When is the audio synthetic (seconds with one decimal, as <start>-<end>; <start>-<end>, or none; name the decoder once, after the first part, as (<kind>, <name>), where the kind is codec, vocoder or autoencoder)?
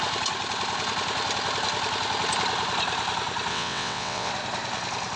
3.5-4.3 (vocoder, WaveNeXt)